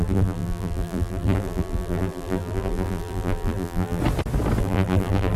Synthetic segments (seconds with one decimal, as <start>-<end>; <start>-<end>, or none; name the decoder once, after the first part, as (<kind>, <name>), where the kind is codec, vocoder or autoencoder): 0.0-4.0 (vocoder, BigVGAN v2); 4.6-5.4